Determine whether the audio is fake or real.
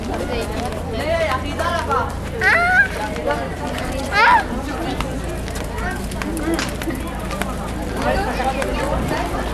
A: real